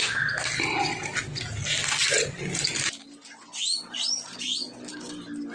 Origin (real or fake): real